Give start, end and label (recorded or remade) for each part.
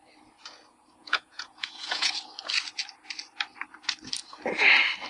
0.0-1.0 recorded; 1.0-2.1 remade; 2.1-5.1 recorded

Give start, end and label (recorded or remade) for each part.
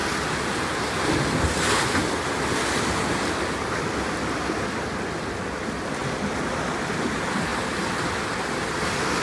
0.0-9.2 recorded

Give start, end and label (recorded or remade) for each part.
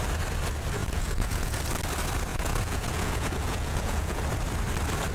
0.0-0.8 recorded; 0.8-1.6 remade; 1.6-2.3 recorded; 2.3-4.2 remade; 4.2-5.1 recorded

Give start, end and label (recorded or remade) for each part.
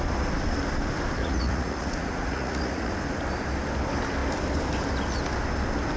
0.0-1.2 recorded; 1.2-2.9 remade; 2.9-6.0 recorded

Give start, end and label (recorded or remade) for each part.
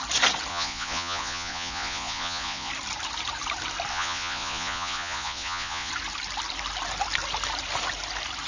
0.0-0.5 recorded; 0.5-2.7 remade; 2.7-3.9 recorded; 3.9-5.9 remade; 5.9-8.5 recorded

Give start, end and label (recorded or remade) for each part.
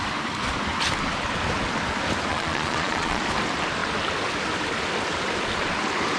0.0-2.3 recorded; 2.3-3.2 remade; 3.2-6.2 recorded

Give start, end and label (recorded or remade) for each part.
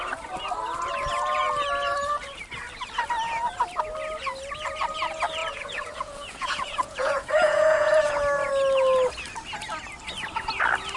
0.0-5.4 recorded; 5.4-8.1 remade; 8.1-11.0 recorded